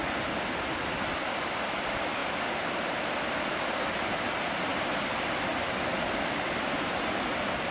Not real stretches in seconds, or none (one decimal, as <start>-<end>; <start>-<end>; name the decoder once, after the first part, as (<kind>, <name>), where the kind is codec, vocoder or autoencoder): 1.8-2.2 (vocoder, BigVGAN v2); 3.7-7.7